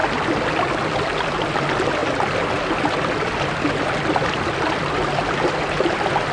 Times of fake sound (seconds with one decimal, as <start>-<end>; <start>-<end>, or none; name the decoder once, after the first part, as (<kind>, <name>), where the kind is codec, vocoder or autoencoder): none